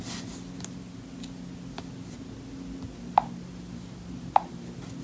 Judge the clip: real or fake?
real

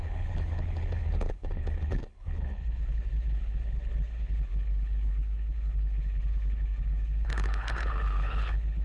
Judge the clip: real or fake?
fake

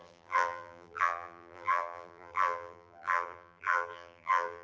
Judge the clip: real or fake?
fake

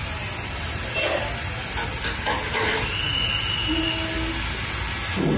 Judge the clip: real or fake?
real